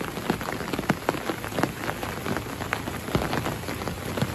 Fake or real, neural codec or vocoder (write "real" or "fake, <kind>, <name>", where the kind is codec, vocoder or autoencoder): real